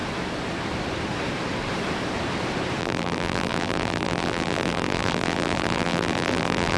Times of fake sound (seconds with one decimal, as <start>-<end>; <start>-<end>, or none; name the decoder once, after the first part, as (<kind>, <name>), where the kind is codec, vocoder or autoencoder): 2.8-6.8 (vocoder, BigVGAN v2)